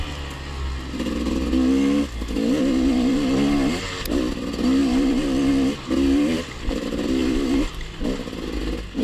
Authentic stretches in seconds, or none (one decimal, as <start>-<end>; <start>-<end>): 0.0-9.0